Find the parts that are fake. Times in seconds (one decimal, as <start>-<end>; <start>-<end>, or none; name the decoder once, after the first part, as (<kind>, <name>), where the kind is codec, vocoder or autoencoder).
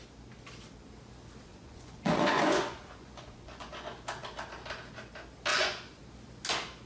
1.5-3.9 (vocoder, Vocos); 5.5-6.0